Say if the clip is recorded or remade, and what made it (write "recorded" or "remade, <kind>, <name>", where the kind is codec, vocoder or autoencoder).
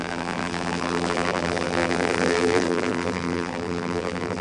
remade, vocoder, BigVGAN v2